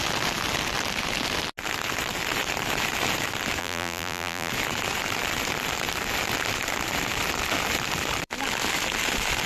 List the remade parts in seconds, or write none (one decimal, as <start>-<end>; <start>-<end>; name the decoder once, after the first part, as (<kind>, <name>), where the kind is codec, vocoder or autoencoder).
3.6-4.5 (vocoder, BigVGAN v2)